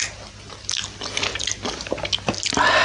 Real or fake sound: real